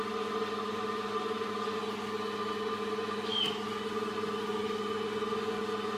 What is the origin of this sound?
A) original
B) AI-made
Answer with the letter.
A